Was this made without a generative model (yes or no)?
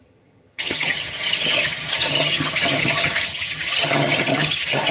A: no